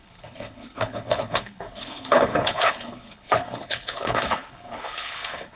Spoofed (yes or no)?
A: yes